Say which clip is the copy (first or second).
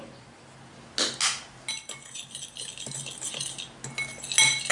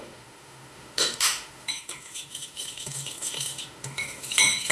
second